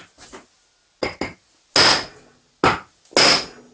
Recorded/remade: recorded